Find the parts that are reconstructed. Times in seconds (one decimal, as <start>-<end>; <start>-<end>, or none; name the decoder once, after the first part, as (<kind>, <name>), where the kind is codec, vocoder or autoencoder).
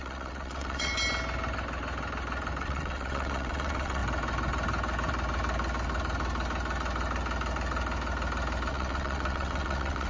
0.0-0.9 (vocoder, WaveNeXt); 2.6-4.0; 8.7-10.1